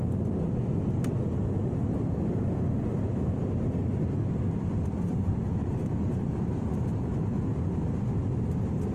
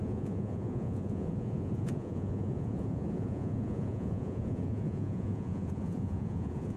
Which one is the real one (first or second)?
first